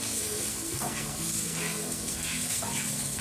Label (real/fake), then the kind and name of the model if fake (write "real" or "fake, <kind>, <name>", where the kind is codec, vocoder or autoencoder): fake, codec, SNAC